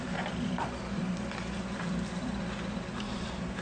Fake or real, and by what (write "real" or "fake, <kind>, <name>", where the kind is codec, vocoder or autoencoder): fake, vocoder, BigVGAN v2